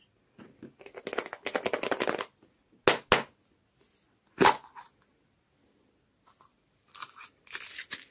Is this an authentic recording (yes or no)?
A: yes